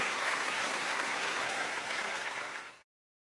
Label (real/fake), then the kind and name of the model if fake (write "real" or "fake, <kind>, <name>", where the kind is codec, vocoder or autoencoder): fake, codec, SNAC